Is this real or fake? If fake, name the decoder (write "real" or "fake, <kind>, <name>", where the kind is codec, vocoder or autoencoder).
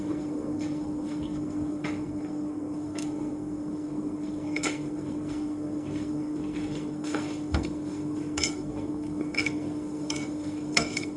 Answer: fake, codec, SNAC